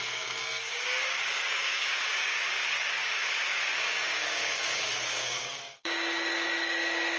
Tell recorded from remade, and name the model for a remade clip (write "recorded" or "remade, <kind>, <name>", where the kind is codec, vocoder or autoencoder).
remade, codec, DAC